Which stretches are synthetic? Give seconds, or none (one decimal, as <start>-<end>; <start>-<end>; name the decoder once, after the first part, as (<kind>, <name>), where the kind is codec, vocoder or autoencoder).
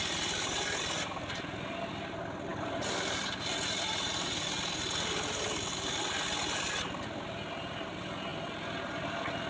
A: none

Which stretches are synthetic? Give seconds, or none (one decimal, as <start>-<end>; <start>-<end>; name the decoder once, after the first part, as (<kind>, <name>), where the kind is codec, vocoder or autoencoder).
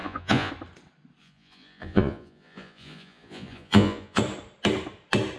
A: 0.0-0.5 (vocoder, Vocos); 1.2-4.2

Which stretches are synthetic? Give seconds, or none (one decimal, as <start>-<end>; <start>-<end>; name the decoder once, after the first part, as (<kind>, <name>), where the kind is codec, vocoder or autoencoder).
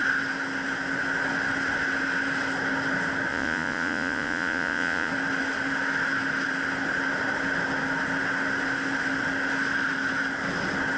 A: 3.3-5.1 (vocoder, Vocos)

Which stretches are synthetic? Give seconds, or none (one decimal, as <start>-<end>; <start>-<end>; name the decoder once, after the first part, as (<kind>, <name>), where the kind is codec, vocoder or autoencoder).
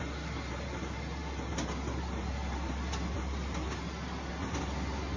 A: none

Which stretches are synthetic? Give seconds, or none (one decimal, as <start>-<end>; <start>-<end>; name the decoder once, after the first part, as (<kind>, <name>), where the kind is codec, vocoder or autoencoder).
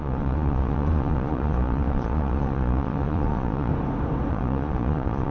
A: 0.0-3.7 (vocoder, Vocos); 4.3-5.3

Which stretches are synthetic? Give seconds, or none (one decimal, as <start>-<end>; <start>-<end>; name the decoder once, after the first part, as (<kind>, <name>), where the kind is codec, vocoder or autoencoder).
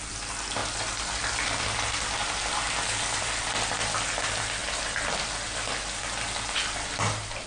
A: none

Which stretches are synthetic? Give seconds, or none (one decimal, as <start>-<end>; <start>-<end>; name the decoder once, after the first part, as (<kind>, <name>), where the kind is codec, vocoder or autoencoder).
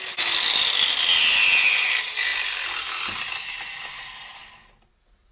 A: 1.3-1.9 (vocoder, Vocos)